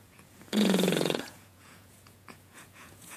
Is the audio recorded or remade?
remade